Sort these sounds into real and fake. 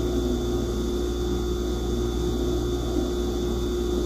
real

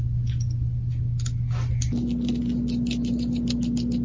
real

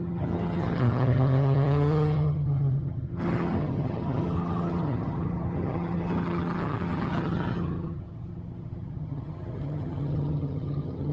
fake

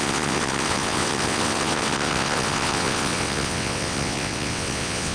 fake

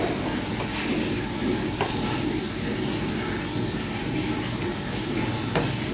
real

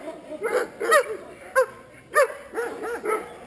real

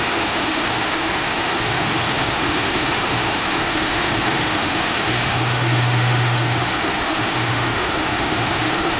fake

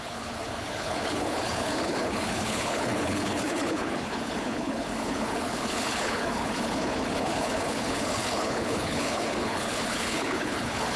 fake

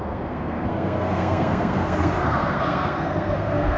fake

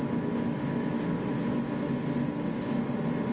real